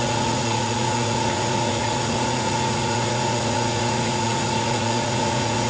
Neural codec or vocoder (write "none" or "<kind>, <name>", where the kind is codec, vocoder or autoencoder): vocoder, Vocos